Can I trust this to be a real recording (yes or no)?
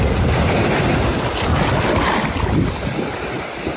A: yes